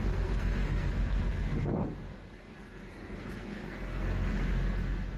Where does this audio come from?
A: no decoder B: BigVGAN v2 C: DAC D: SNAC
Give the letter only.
D